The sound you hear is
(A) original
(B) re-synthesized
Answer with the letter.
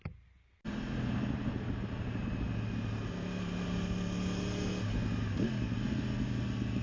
A